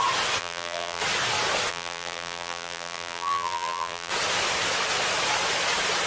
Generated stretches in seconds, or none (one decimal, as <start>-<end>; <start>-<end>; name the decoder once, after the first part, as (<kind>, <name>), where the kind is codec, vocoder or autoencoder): 0.4-1.0 (vocoder, BigVGAN v2); 1.7-4.1